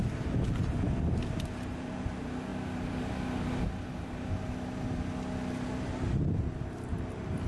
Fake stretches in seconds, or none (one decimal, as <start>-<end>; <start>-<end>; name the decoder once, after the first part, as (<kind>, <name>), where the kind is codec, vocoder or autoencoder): 0.5-2.1 (vocoder, BigVGAN v2)